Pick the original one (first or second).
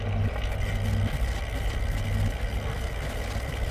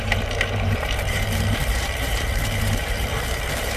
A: first